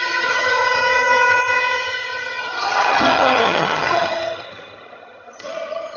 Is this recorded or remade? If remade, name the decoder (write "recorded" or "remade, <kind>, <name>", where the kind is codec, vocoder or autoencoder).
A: remade, vocoder, HiFi-GAN